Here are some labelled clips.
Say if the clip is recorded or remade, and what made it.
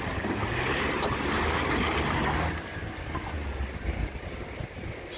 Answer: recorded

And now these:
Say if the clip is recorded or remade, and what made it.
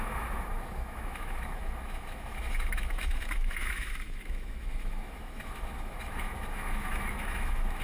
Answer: remade, autoencoder, DAC-VAE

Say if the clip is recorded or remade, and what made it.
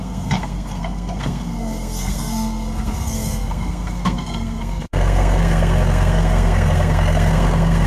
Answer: remade, codec, SNAC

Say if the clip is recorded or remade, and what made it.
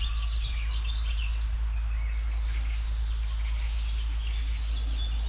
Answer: recorded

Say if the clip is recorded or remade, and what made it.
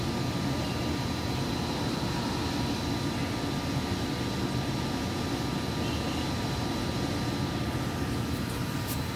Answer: recorded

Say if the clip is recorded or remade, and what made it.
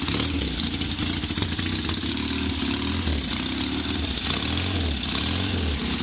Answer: recorded